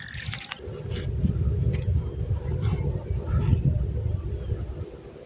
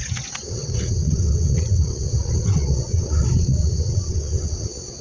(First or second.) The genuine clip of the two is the first